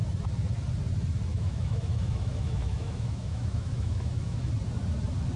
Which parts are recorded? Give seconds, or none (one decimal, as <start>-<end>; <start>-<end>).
0.0-1.3; 4.5-5.4